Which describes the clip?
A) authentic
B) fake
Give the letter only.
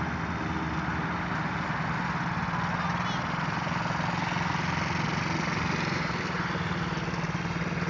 A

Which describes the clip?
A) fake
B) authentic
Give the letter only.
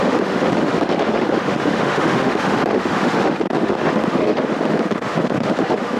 A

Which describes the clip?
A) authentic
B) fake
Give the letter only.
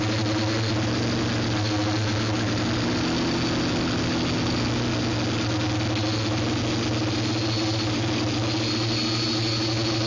A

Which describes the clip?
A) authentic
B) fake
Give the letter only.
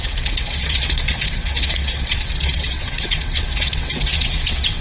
B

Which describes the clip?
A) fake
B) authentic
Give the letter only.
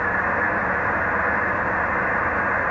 B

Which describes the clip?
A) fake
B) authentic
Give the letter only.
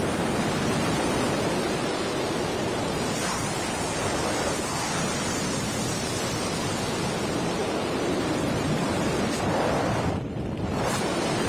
A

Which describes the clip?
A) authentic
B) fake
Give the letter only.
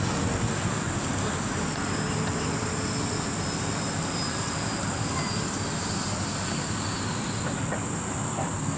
A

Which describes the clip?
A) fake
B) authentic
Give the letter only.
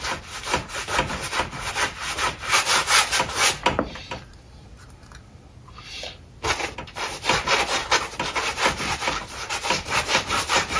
B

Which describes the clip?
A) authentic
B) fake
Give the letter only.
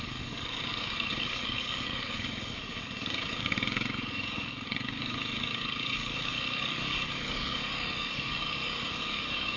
B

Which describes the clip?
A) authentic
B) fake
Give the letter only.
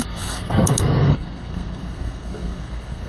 B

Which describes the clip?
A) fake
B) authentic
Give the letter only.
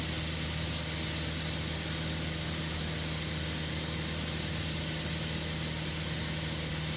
B